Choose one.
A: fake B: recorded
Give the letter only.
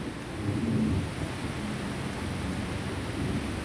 B